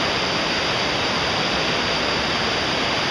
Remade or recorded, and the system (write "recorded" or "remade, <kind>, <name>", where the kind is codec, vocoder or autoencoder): recorded